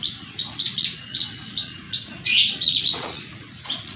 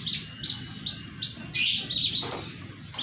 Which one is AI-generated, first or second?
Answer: first